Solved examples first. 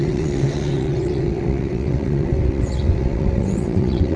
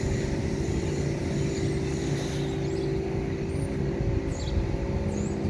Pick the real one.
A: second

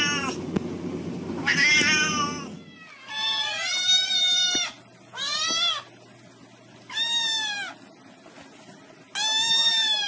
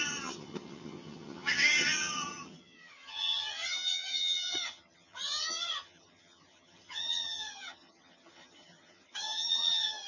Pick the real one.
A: first